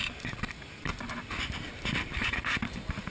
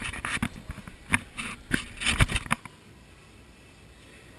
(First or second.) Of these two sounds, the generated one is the first